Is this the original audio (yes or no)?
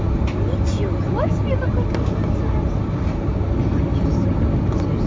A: yes